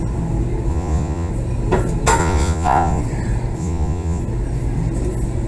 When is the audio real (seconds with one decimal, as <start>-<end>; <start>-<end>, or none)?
0.0-0.7; 1.3-2.2; 3.0-3.6; 4.2-5.5

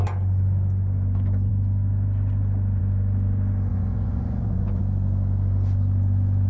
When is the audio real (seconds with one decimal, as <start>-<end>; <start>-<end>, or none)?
0.0-3.7; 4.8-6.5